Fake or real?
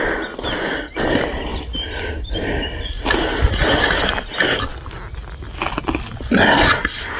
real